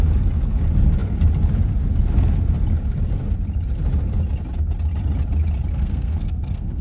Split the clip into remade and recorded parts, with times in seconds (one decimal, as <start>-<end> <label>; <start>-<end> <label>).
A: 0.0-5.7 recorded; 5.7-6.8 remade